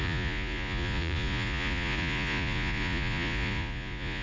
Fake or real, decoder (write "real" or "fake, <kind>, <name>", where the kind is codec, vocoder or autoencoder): fake, vocoder, Vocos